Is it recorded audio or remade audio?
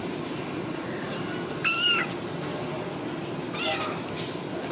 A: recorded